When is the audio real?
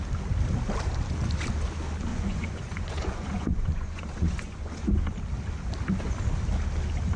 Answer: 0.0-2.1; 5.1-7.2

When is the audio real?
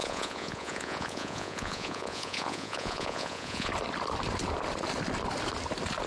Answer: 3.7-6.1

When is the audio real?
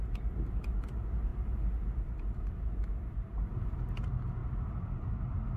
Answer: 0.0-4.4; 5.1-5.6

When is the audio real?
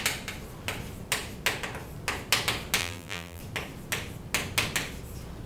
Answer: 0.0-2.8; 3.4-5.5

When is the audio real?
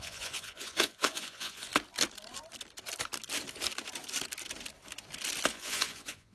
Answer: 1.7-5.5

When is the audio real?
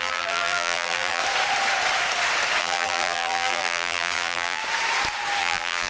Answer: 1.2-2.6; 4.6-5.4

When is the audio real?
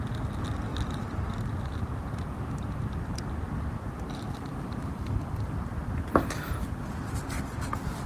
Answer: 0.0-8.1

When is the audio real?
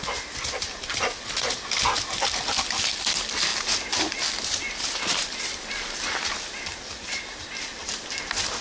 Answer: 0.0-8.6